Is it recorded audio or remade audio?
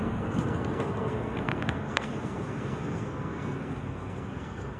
remade